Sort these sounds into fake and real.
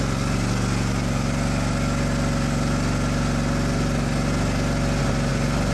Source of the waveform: real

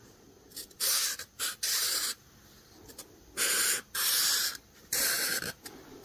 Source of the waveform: real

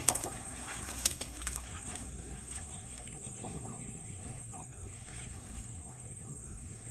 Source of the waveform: fake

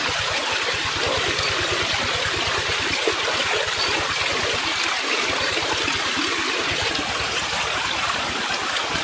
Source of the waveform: real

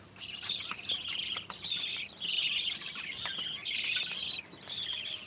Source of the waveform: real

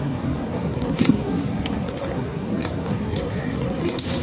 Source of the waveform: fake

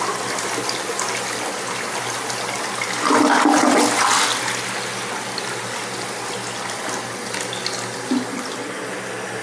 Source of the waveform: real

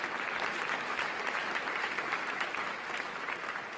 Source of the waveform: real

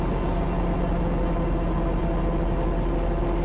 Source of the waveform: real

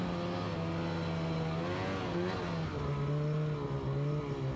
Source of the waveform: real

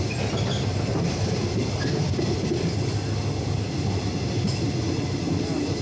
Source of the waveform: real